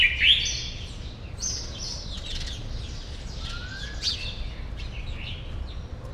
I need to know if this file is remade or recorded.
recorded